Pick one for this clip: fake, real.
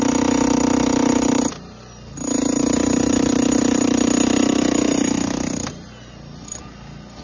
real